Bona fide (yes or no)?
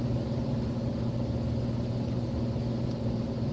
yes